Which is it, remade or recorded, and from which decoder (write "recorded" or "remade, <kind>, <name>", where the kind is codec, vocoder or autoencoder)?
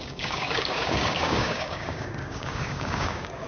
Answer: remade, codec, DAC